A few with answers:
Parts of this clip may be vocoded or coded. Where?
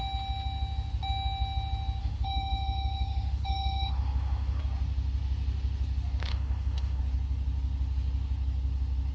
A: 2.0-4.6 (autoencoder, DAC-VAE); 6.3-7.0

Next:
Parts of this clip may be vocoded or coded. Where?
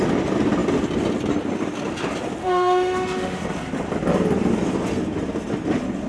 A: 2.4-3.4 (autoencoder, DAC-VAE)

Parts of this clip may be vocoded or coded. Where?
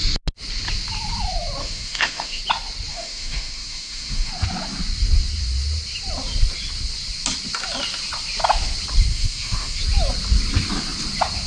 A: 1.6-2.4 (autoencoder, DAC-VAE); 2.9-4.3; 9.1-9.8